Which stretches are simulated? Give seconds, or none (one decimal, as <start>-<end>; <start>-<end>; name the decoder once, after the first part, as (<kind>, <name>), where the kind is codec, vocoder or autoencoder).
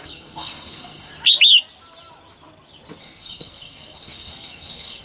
0.0-1.1 (codec, SNAC); 3.0-5.0